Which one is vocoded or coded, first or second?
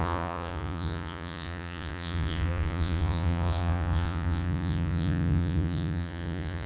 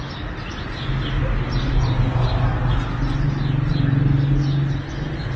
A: first